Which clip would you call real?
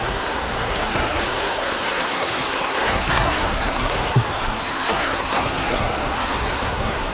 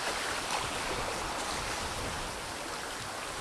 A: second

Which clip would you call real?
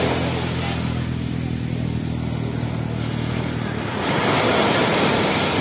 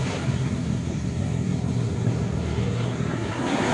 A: first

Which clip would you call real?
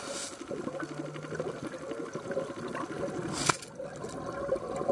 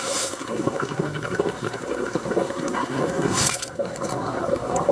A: first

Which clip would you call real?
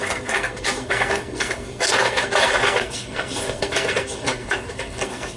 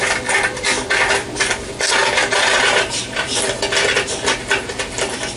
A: second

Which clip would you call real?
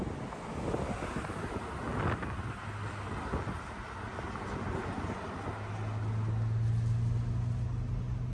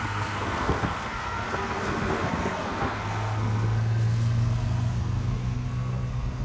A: first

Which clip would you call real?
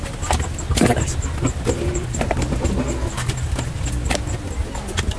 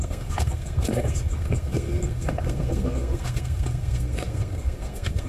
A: first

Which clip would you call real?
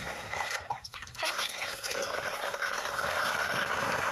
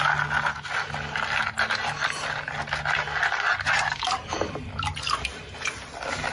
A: second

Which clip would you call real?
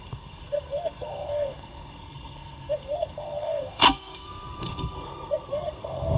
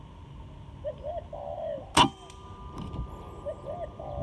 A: second